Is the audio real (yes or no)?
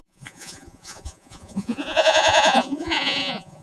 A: no